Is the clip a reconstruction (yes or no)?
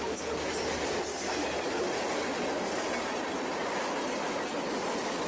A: no